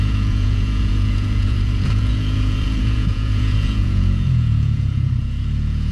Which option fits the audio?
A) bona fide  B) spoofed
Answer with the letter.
B